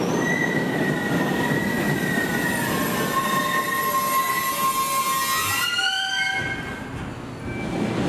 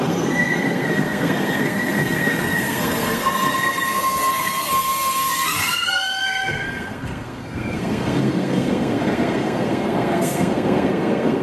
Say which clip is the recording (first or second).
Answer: first